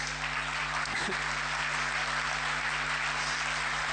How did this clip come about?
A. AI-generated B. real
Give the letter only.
B